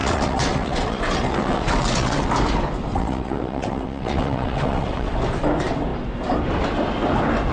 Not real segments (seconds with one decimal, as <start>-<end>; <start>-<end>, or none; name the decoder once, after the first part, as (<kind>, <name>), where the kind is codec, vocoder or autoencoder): 0.0-2.3 (vocoder, WaveNeXt); 2.9-5.2

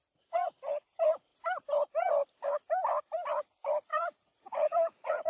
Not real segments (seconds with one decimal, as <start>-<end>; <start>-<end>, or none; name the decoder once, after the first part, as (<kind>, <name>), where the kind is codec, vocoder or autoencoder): 3.9-5.3 (vocoder, Vocos)

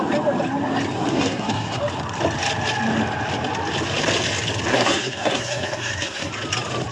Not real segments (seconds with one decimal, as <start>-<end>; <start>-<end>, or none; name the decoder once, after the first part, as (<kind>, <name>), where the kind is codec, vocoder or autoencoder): 1.1-1.8 (codec, SNAC); 4.7-6.3

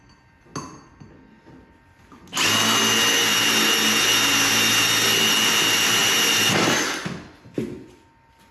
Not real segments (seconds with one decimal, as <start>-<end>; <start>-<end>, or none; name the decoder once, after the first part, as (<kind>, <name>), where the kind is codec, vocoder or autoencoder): none

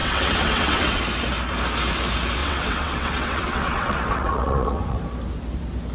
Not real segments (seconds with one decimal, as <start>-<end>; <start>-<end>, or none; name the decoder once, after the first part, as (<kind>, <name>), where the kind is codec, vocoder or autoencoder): 0.0-1.0 (vocoder, WaveNeXt); 2.4-5.0

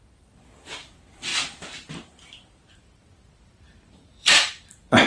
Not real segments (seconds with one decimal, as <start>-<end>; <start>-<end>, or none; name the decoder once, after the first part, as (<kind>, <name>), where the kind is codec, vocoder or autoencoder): 0.0-1.3 (vocoder, BigVGAN v2); 2.7-5.1

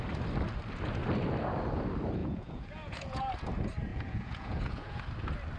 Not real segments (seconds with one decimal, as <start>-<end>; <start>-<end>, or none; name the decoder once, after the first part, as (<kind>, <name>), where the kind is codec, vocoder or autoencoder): 2.2-3.2 (vocoder, Vocos); 3.9-5.0

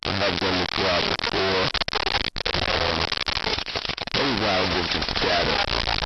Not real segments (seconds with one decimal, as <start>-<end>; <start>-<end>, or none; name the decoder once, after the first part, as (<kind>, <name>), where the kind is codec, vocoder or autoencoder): 3.5-4.1 (vocoder, Vocos); 4.6-5.3